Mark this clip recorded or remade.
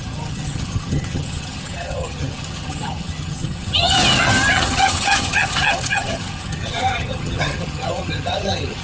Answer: remade